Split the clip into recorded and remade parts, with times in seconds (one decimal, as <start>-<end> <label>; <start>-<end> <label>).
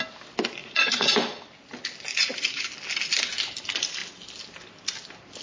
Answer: 0.0-0.6 recorded; 0.6-1.1 remade; 1.1-2.1 recorded; 2.1-2.7 remade; 2.7-5.4 recorded